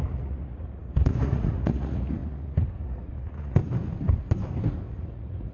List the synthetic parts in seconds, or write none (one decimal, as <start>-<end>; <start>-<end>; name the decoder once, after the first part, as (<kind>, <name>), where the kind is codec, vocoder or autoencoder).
0.0-3.6 (vocoder, Vocos); 4.9-5.5